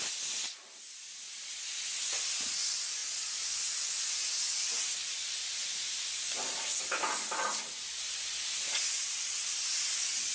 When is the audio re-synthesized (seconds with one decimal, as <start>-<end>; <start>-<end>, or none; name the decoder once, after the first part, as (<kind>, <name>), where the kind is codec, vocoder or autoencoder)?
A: none